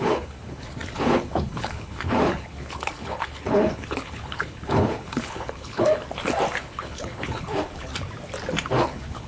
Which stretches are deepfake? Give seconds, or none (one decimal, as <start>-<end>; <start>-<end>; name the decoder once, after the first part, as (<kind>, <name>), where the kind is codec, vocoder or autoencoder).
0.0-5.9 (codec, HILCodec); 6.6-7.9; 8.6-9.3